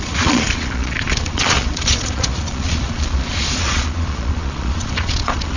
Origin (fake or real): fake